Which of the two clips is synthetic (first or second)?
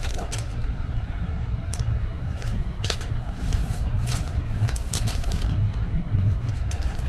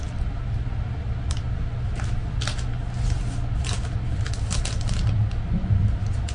first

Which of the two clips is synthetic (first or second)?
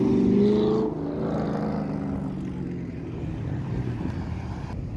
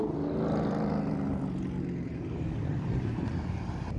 second